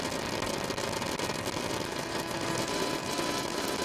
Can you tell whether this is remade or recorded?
recorded